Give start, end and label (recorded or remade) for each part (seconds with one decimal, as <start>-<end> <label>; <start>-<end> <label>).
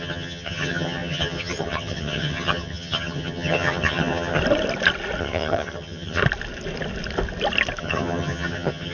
0.0-4.4 remade; 4.4-5.2 recorded; 5.2-6.2 remade; 6.2-7.8 recorded; 7.8-8.9 remade